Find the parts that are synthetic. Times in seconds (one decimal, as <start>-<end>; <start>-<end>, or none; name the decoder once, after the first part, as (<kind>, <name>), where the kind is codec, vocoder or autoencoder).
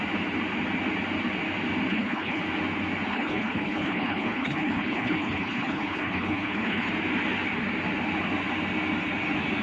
1.9-2.4 (codec, HILCodec); 3.1-6.9